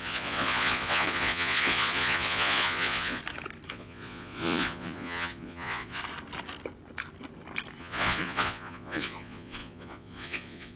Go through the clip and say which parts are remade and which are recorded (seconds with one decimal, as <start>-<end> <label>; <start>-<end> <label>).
0.0-3.2 remade; 3.2-3.7 recorded; 3.7-6.0 remade; 6.0-7.8 recorded; 7.8-10.8 remade